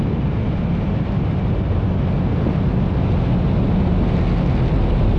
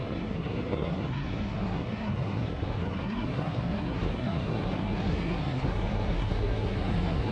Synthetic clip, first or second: second